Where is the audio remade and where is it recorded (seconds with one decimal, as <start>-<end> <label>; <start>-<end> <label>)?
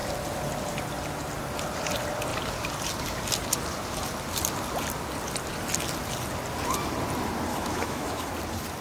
0.0-7.5 recorded; 7.5-8.3 remade; 8.3-8.8 recorded